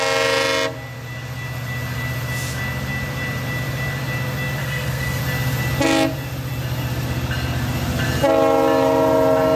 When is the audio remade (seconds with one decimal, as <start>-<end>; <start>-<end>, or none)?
4.6-5.2